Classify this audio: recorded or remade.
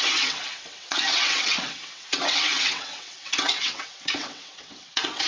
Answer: remade